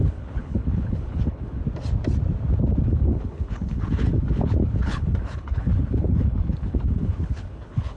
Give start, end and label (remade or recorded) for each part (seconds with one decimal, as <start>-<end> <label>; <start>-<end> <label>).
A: 0.0-1.6 remade; 1.6-2.8 recorded; 2.8-8.0 remade